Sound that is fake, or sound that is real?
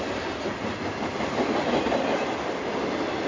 real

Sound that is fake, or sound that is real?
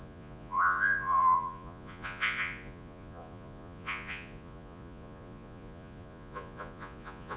fake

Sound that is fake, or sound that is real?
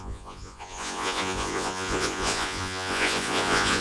fake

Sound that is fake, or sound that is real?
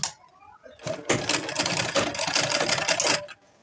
real